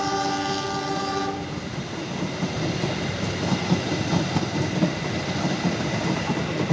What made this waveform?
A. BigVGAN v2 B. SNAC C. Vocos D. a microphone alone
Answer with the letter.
D